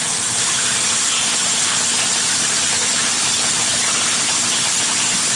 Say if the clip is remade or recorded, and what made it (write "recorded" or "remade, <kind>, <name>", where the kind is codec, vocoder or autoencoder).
remade, vocoder, BigVGAN v2